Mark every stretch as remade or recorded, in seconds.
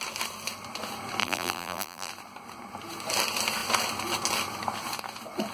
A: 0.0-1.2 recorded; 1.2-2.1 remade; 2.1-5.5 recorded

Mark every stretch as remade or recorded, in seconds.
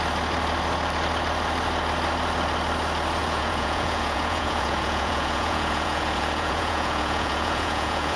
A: 0.0-3.2 recorded; 3.2-8.2 remade